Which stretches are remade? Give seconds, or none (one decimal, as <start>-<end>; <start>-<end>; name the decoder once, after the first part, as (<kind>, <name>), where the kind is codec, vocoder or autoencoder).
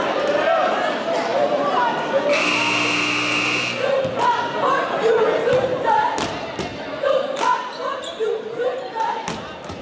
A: none